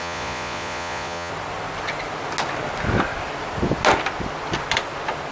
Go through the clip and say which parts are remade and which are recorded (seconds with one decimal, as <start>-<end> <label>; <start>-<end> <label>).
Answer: 0.0-1.3 remade; 1.3-5.3 recorded